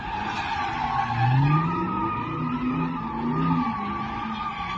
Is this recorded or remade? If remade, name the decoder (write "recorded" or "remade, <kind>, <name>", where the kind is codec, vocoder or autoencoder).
recorded